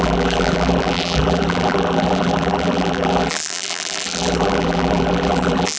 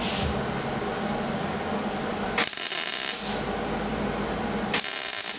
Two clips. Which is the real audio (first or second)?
second